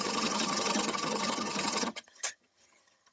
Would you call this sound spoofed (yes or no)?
yes